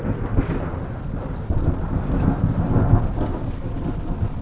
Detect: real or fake real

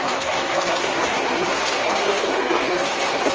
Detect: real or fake fake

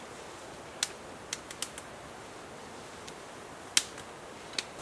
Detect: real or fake real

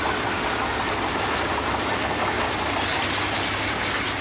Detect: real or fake real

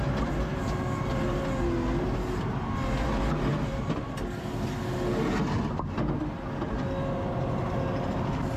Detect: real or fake real